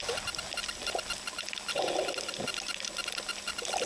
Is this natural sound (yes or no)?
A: yes